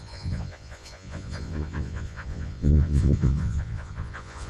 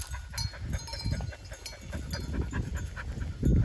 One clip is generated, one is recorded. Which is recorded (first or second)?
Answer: second